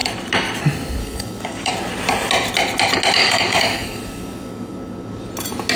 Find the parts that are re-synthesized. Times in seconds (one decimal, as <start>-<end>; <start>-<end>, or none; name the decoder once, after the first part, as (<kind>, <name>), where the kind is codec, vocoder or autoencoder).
1.0-1.7 (codec, DAC); 3.2-5.3